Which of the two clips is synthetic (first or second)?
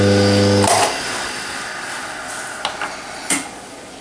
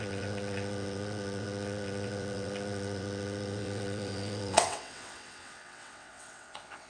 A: second